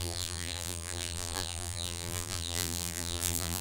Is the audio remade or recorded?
remade